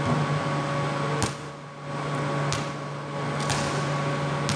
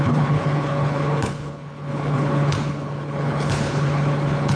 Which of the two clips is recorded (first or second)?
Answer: first